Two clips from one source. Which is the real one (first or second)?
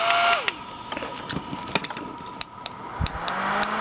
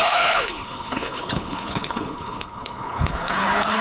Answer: first